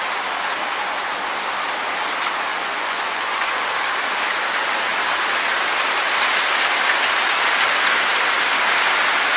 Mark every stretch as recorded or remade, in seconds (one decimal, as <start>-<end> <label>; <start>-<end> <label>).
0.0-2.5 recorded; 2.5-3.7 remade; 3.7-9.4 recorded